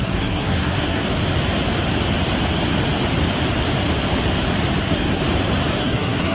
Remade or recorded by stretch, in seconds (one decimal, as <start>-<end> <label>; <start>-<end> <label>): 0.0-1.0 remade; 1.0-4.8 recorded; 4.8-5.2 remade; 5.2-5.8 recorded; 5.8-6.3 remade